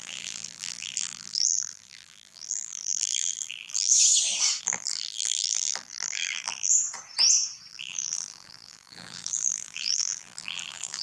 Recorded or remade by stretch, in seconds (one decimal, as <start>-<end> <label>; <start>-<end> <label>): 0.0-3.9 remade; 3.9-4.6 recorded; 4.6-6.7 remade; 6.7-7.7 recorded; 7.7-11.0 remade

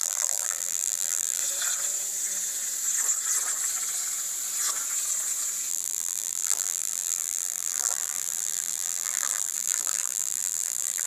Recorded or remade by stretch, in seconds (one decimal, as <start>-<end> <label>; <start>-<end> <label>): 0.0-1.4 remade; 1.4-5.7 recorded; 5.7-11.1 remade

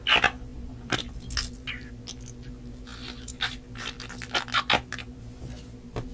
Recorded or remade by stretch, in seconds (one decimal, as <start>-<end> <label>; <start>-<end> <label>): 0.0-0.5 recorded; 0.5-1.1 remade; 1.1-6.1 recorded

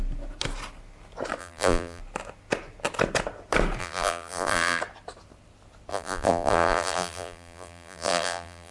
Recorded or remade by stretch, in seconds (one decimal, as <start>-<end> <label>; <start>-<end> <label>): 0.0-1.4 recorded; 1.4-2.0 remade; 2.0-3.8 recorded; 3.8-4.8 remade; 4.8-5.9 recorded; 5.9-8.7 remade